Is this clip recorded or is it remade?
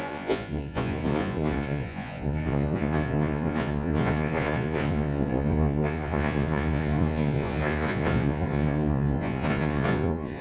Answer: remade